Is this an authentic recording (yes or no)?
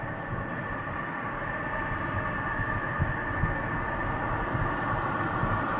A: yes